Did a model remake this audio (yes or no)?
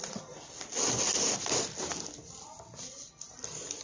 no